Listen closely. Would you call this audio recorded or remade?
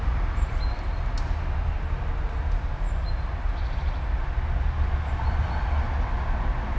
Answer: recorded